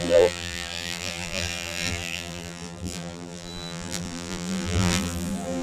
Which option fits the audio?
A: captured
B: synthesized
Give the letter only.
B